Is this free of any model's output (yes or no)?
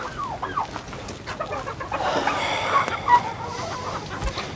yes